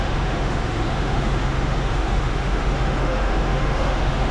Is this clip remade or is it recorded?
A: remade